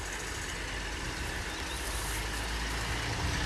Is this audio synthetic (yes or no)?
no